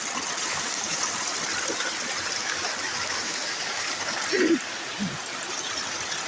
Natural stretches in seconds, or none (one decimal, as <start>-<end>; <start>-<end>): 0.0-0.5; 1.0-2.4; 4.2-6.3